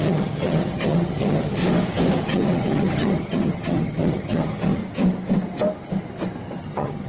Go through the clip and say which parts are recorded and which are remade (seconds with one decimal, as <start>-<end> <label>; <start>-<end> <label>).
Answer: 0.0-1.6 remade; 1.6-2.2 recorded; 2.2-4.8 remade; 4.8-6.6 recorded; 6.6-7.1 remade